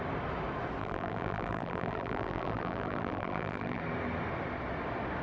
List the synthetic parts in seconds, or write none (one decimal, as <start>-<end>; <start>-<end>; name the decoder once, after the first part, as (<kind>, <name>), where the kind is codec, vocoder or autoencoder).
0.8-3.8 (vocoder, BigVGAN v2)